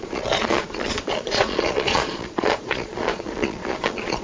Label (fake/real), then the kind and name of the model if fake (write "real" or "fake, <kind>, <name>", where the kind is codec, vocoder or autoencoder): fake, vocoder, Vocos